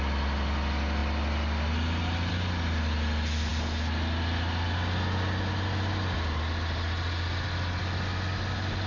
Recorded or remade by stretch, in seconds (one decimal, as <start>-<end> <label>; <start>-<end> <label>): 0.0-8.9 recorded